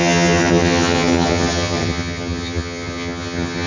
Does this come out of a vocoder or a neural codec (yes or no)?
yes